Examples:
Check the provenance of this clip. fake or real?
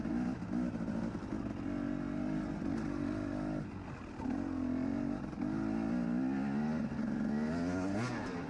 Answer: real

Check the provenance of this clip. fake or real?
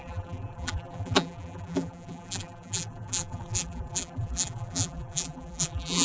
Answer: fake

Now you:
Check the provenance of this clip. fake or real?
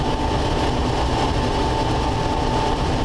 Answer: real